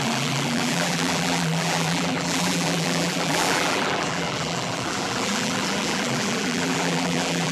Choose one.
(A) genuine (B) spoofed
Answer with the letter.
B